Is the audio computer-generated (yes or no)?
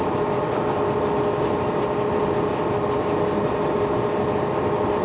no